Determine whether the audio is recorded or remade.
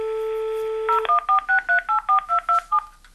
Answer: recorded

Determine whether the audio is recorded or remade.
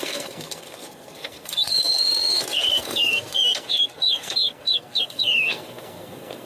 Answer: remade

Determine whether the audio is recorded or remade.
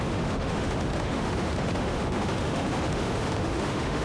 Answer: remade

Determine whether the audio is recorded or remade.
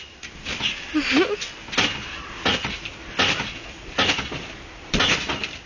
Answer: recorded